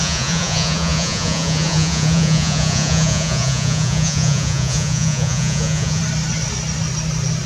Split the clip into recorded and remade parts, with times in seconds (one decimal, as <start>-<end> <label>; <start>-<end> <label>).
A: 0.0-6.0 remade; 6.0-7.5 recorded